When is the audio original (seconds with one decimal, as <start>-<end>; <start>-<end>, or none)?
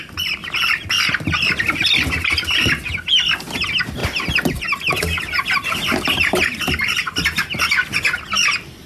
0.0-8.9